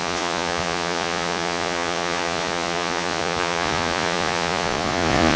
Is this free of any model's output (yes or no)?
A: no